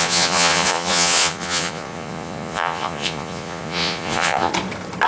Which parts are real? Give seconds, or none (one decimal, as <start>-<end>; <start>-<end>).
4.5-5.1